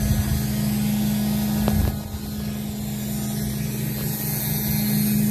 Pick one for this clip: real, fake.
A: real